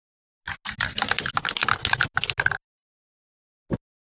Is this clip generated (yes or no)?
no